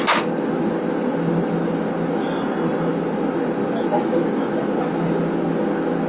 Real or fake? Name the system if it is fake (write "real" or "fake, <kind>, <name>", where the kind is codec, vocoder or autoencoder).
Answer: real